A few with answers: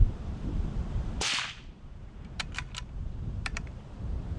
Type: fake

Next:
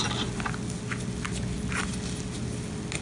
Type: real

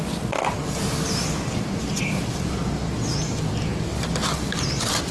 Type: real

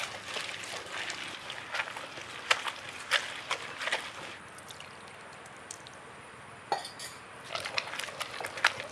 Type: real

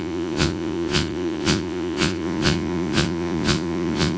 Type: fake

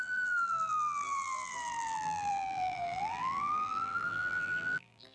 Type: fake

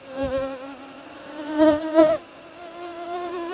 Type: fake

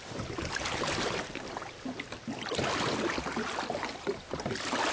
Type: real